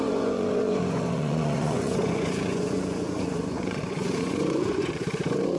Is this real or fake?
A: fake